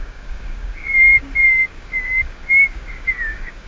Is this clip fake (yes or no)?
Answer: yes